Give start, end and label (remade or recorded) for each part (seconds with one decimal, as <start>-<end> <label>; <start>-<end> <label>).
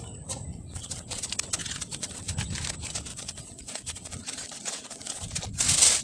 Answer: 0.0-0.5 recorded; 0.5-1.2 remade; 1.2-1.6 recorded; 1.6-2.3 remade; 2.3-3.1 recorded; 3.1-5.3 remade; 5.3-6.0 recorded